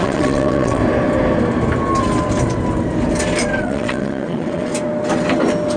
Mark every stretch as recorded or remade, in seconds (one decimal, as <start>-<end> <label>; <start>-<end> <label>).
0.0-0.8 remade; 0.8-3.6 recorded; 3.6-4.7 remade; 4.7-5.8 recorded